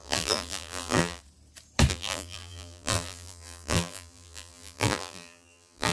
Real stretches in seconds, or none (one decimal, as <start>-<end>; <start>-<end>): 1.2-1.9